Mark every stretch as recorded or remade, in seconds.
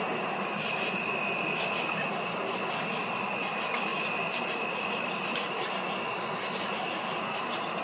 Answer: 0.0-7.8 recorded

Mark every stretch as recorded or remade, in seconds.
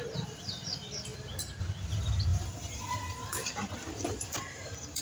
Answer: 0.0-2.3 recorded; 2.3-5.0 remade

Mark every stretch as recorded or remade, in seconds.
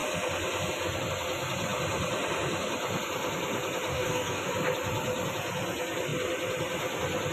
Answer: 0.0-3.9 recorded; 3.9-4.5 remade; 4.5-7.3 recorded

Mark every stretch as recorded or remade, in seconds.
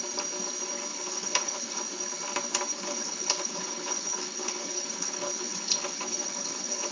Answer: 0.0-0.9 recorded; 0.9-1.8 remade; 1.8-2.7 recorded; 2.7-6.9 remade